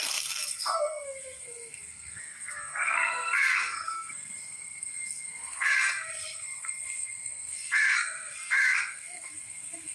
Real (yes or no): no